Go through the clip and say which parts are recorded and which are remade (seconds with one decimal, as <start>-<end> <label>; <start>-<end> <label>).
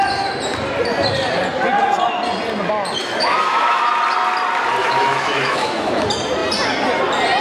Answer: 0.0-3.0 recorded; 3.0-3.9 remade; 3.9-4.8 recorded; 4.8-6.0 remade; 6.0-7.4 recorded